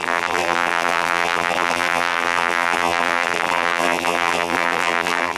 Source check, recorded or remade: remade